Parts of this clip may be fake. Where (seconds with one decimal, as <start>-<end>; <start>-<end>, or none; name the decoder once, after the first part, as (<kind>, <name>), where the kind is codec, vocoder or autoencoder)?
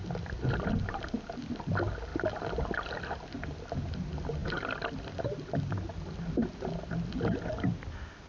none